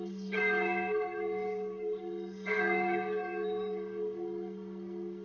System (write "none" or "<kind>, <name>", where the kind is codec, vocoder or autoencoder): codec, SNAC